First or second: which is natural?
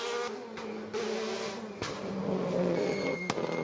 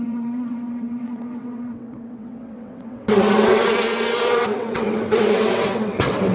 first